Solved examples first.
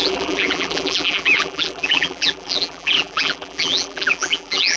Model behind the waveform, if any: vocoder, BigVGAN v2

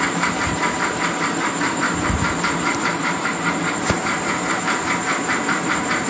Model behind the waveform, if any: vocoder, BigVGAN v2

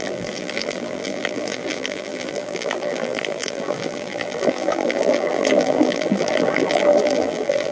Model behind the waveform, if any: vocoder, BigVGAN v2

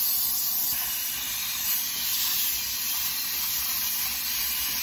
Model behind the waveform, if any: none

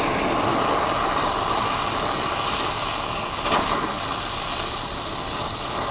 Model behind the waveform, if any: none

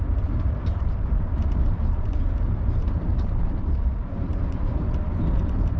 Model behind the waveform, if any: vocoder, BigVGAN v2